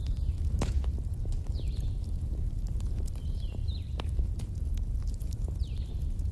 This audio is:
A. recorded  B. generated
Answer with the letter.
B